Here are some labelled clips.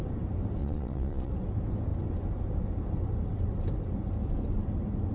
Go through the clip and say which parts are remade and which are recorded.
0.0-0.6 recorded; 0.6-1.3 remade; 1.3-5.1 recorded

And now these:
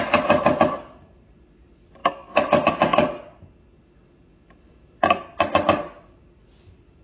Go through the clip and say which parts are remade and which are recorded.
0.0-7.0 recorded

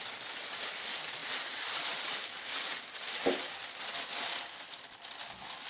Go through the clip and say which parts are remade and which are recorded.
0.0-5.7 recorded

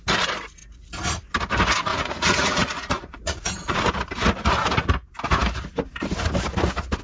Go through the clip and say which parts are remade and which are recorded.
0.0-1.9 recorded; 1.9-3.9 remade; 3.9-7.0 recorded

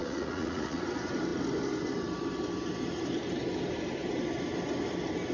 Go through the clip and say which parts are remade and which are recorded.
0.0-0.8 remade; 0.8-5.3 recorded

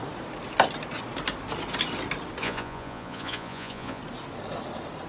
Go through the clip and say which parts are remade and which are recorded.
0.0-2.4 recorded; 2.4-4.0 remade; 4.0-5.1 recorded

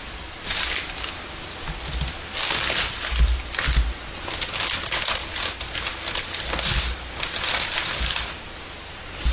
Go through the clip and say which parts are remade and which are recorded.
0.0-9.3 recorded

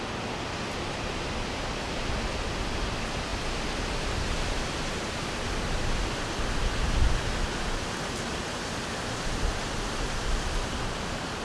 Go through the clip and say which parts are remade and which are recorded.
0.0-11.4 recorded